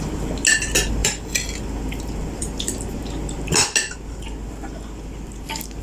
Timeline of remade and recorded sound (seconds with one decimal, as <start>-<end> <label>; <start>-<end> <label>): 0.0-1.0 recorded; 1.0-1.6 remade; 1.6-2.2 recorded; 2.2-3.0 remade; 3.0-5.8 recorded